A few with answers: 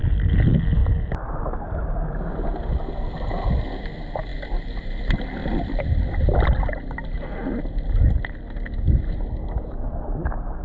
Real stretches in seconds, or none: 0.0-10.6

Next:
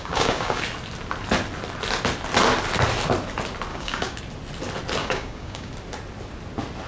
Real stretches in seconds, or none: 0.6-3.7; 4.2-5.0; 5.7-6.9

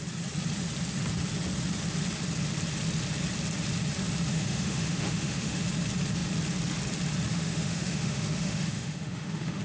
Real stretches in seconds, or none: 0.0-4.3; 5.6-7.3